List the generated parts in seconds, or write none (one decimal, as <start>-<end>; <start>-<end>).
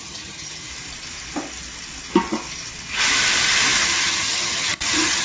0.0-0.7; 3.8-5.2